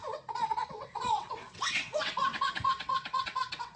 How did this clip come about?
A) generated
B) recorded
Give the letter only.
A